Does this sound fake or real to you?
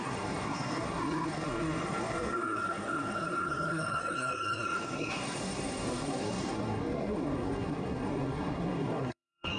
fake